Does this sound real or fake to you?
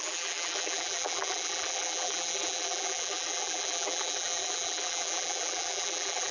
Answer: fake